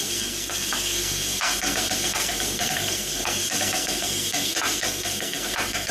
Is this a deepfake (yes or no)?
yes